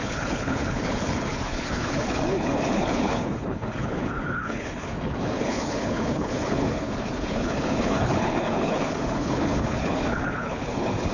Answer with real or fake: fake